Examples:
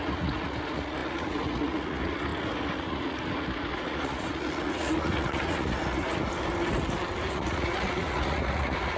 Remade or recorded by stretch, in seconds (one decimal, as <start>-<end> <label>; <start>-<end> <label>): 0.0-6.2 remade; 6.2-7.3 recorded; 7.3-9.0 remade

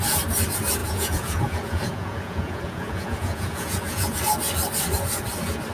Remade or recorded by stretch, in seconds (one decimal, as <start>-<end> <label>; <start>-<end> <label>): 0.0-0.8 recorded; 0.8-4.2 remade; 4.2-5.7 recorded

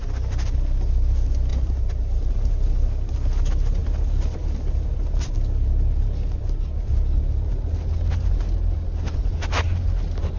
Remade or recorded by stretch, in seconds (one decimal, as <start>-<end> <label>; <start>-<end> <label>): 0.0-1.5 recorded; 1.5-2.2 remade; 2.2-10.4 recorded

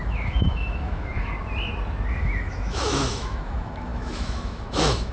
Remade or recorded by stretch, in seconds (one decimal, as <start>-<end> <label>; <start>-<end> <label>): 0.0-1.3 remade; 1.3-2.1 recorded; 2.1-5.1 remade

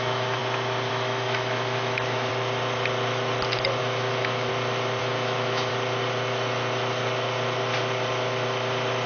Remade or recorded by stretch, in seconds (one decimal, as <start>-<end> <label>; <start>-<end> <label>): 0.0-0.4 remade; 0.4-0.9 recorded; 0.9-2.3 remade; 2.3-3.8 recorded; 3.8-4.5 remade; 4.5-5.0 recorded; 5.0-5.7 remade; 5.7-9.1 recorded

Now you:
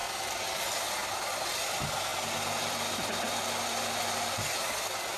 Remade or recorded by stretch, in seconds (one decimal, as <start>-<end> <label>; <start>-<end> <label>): 0.0-0.6 remade; 0.6-5.2 recorded

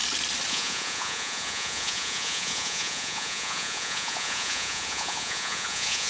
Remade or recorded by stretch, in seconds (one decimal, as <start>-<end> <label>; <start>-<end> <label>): 0.0-0.5 recorded; 0.5-6.1 remade

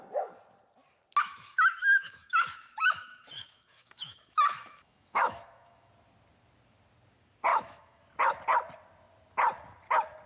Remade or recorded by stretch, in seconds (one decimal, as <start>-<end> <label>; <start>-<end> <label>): 0.0-1.2 recorded; 1.2-5.9 remade; 5.9-7.5 recorded; 7.5-8.0 remade; 8.0-10.3 recorded